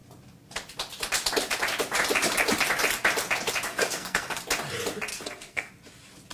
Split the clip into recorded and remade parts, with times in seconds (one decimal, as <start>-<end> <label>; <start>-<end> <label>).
0.0-3.7 recorded; 3.7-4.4 remade; 4.4-5.1 recorded; 5.1-5.7 remade; 5.7-6.3 recorded